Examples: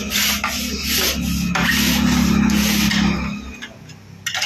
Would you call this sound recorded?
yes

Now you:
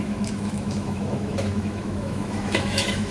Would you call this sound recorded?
no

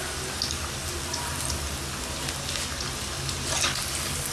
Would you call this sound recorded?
yes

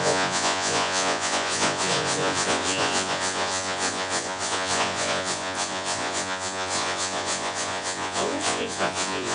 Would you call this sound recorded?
no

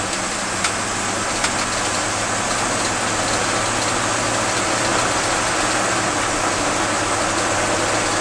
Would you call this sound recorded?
yes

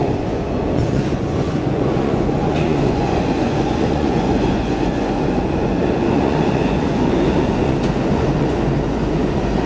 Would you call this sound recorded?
no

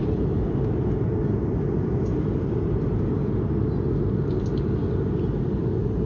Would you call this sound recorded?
yes